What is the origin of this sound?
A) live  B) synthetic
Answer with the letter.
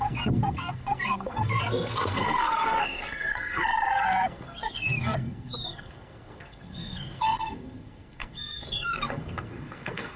B